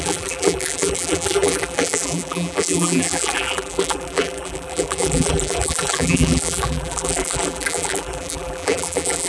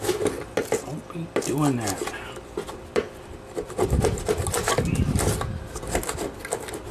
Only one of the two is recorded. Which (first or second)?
second